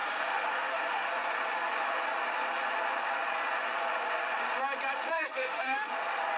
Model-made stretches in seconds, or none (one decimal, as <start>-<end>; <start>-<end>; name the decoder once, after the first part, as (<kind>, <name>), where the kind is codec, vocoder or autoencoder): 0.0-1.1 (autoencoder, DAC-VAE); 5.1-5.9